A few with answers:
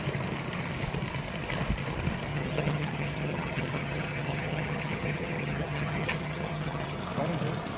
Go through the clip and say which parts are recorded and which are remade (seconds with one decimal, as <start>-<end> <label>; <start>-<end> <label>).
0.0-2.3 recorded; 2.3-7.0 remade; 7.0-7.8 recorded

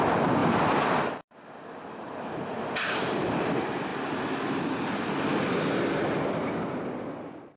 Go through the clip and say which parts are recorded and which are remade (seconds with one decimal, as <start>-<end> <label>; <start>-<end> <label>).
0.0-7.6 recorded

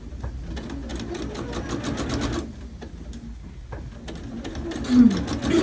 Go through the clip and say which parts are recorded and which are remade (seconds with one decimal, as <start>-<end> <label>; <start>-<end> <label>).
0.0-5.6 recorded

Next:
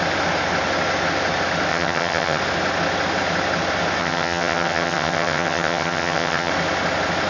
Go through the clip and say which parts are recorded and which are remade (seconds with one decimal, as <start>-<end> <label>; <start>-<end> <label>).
0.0-1.7 recorded; 1.7-2.4 remade; 2.4-4.0 recorded; 4.0-6.5 remade; 6.5-7.3 recorded

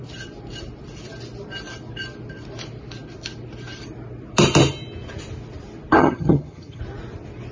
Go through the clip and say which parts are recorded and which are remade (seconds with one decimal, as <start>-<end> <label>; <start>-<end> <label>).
0.0-6.0 recorded; 6.0-6.8 remade; 6.8-7.5 recorded

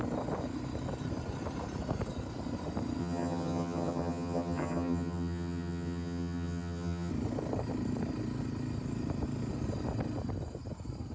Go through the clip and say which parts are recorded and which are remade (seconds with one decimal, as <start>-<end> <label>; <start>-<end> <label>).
0.0-3.0 recorded; 3.0-7.1 remade; 7.1-11.1 recorded

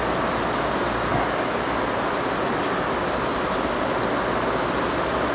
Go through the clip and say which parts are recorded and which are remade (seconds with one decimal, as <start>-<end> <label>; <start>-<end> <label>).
0.0-5.3 recorded

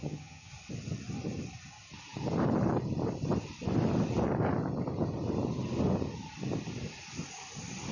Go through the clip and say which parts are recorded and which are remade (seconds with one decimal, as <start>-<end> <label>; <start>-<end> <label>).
0.0-0.5 remade; 0.5-7.9 recorded